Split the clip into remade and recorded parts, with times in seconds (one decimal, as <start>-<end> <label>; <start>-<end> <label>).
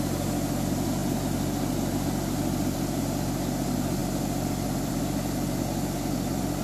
0.0-1.0 recorded; 1.0-3.0 remade; 3.0-4.0 recorded; 4.0-5.0 remade; 5.0-6.6 recorded